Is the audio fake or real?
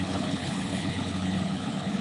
fake